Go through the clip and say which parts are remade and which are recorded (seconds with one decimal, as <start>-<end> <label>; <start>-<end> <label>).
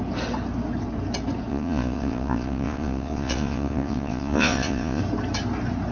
0.0-1.5 recorded; 1.5-5.0 remade; 5.0-5.9 recorded